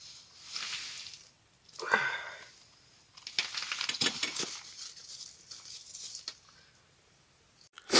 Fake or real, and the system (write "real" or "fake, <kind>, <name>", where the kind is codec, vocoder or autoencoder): real